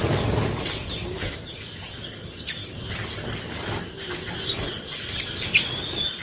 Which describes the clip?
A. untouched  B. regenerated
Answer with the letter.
A